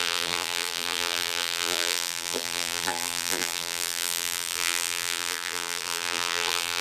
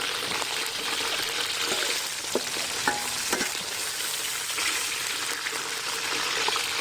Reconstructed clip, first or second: first